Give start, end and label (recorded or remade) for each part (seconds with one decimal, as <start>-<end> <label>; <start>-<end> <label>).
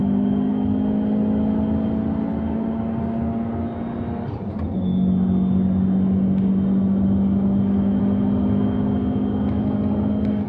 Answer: 0.0-10.5 recorded